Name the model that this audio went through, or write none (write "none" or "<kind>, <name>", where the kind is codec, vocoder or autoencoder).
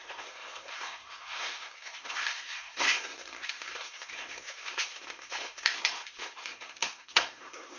codec, SNAC